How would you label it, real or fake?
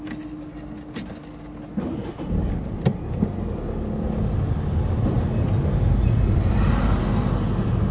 real